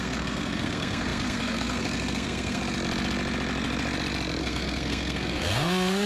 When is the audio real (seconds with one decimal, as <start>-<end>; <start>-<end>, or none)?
2.6-4.4